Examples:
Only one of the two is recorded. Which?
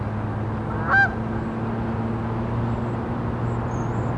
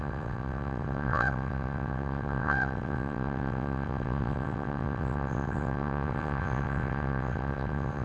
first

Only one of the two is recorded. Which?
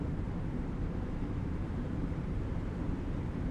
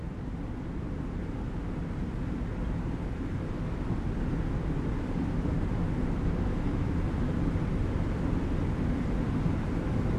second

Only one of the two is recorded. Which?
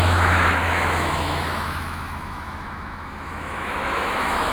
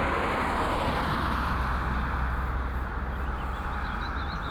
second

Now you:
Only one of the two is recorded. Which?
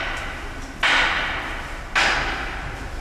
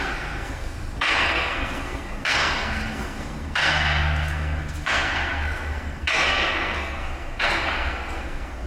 first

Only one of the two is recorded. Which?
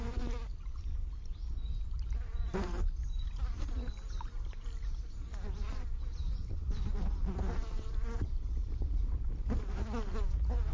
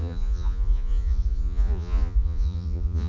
first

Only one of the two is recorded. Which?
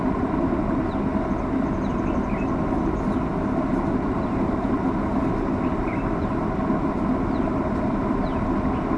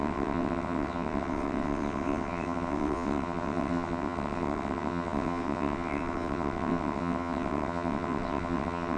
first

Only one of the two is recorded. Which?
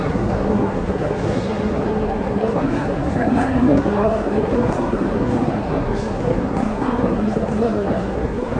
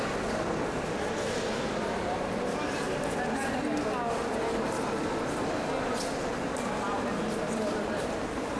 second